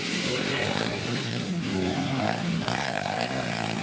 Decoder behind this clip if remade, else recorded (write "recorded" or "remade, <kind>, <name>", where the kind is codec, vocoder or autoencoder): remade, codec, SNAC